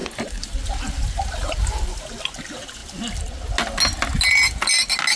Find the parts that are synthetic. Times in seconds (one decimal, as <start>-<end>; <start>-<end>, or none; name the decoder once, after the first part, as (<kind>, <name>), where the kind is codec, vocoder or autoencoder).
0.0-0.6 (vocoder, BigVGAN v2)